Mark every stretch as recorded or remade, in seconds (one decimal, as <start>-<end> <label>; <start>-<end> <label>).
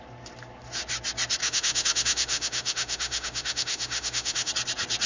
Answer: 0.0-1.4 recorded; 1.4-4.5 remade; 4.5-5.1 recorded